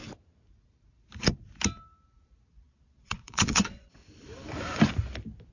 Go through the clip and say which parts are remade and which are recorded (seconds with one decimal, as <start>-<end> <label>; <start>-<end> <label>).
0.0-2.5 recorded; 2.5-4.0 remade; 4.0-5.5 recorded

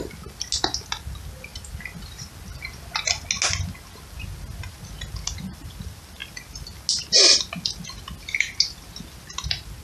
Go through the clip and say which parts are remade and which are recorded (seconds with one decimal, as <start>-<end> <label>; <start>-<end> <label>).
0.0-9.8 recorded